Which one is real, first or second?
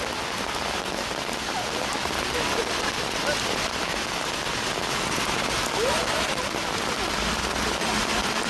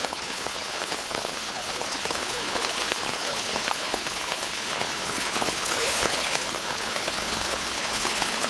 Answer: first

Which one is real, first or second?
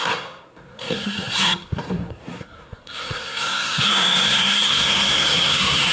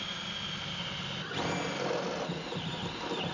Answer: second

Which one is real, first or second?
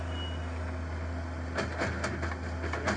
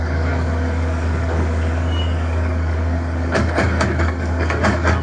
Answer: first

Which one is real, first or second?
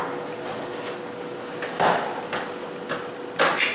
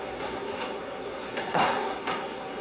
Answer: first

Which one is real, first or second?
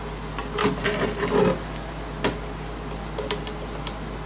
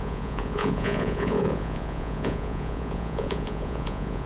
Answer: first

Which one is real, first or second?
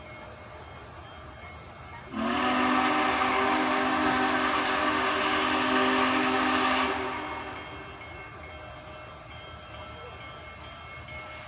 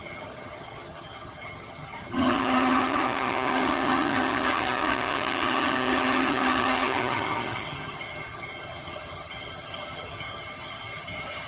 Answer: first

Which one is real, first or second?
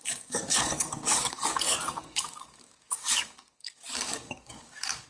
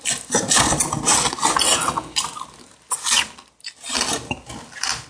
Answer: second